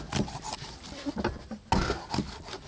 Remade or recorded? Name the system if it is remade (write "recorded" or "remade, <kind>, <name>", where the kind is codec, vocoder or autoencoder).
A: recorded